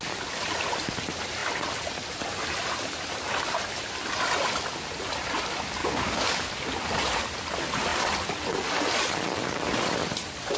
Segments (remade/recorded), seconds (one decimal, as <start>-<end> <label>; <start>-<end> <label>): 0.0-5.8 recorded; 5.8-6.5 remade; 6.5-10.6 recorded